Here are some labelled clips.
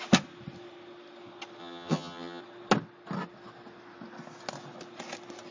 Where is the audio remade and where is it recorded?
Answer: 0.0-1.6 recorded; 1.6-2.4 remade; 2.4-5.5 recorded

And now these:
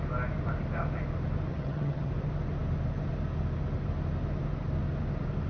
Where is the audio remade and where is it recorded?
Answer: 0.0-1.5 recorded; 1.5-2.1 remade; 2.1-5.5 recorded

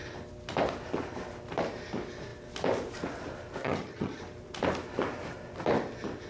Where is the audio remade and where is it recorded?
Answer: 0.0-3.6 recorded; 3.6-4.2 remade; 4.2-6.3 recorded

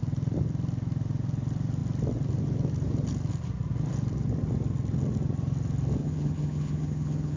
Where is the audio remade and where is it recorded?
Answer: 0.0-6.0 recorded; 6.0-7.4 remade

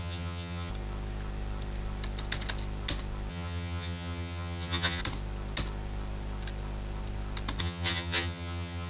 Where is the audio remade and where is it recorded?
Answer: 0.0-0.7 remade; 0.7-3.3 recorded; 3.3-5.0 remade; 5.0-7.6 recorded; 7.6-8.9 remade

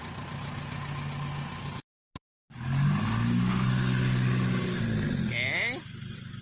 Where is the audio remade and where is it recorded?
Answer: 0.0-6.4 recorded

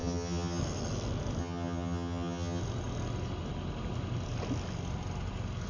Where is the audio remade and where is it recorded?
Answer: 0.0-0.6 remade; 0.6-1.4 recorded; 1.4-2.6 remade; 2.6-5.7 recorded

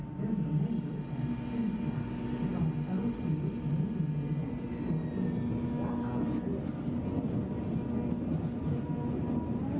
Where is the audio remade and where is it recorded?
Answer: 0.0-9.8 recorded